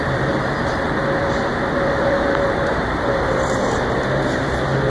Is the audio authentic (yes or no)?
no